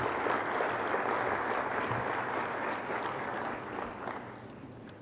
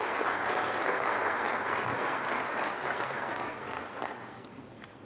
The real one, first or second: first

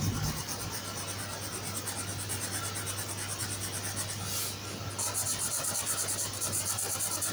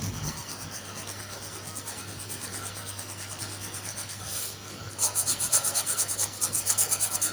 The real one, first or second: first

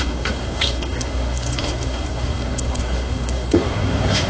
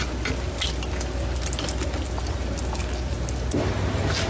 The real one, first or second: second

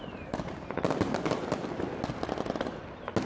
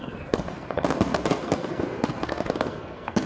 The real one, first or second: first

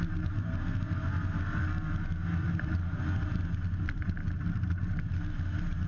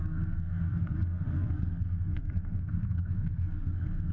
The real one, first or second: first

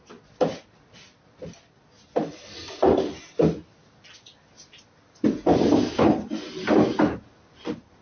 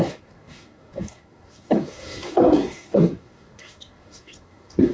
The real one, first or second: first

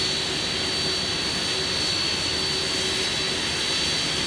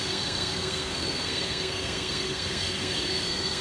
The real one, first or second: first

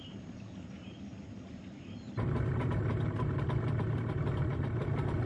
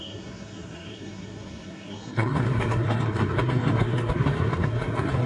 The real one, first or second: first